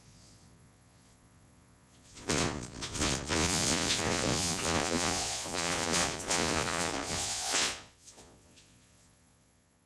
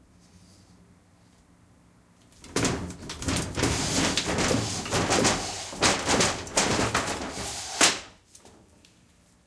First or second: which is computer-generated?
first